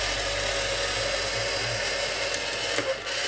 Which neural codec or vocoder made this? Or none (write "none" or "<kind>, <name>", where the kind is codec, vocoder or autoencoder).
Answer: none